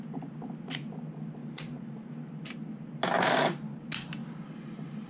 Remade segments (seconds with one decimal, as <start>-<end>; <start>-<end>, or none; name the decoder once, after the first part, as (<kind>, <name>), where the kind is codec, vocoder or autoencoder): 1.4-2.3 (vocoder, BigVGAN v2)